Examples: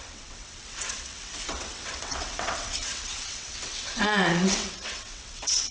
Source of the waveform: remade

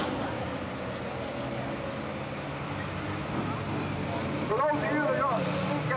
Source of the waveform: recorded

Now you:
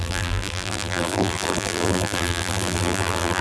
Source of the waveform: remade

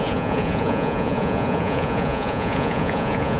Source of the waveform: remade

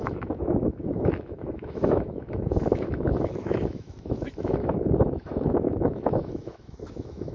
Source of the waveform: remade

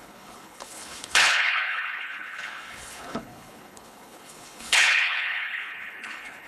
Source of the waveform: remade